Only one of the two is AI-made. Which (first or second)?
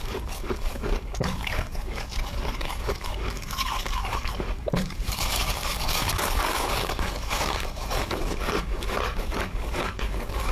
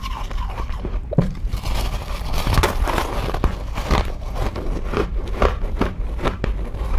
first